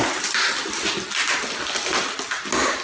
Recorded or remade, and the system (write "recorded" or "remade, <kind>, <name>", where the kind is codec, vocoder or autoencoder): recorded